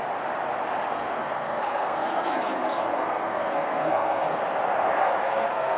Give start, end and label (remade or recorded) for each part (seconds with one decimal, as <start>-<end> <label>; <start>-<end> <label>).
0.0-0.9 recorded; 0.9-4.4 remade; 4.4-5.0 recorded; 5.0-5.8 remade